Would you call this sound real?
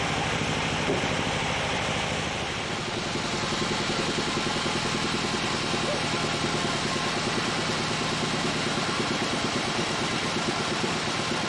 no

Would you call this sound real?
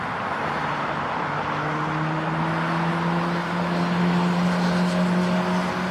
yes